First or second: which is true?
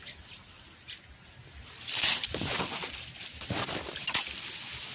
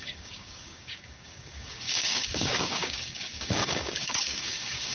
first